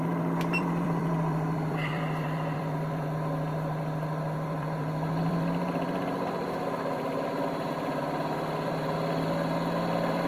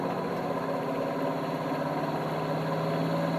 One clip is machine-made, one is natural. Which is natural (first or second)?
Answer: second